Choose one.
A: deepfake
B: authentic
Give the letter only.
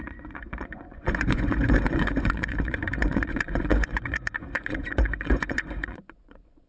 A